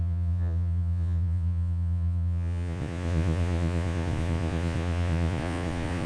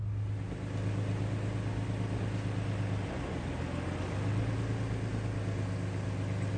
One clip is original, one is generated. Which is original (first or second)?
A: second